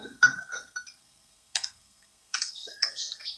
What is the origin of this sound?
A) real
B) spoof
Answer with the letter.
B